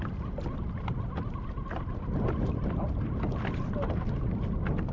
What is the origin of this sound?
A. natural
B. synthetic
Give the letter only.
A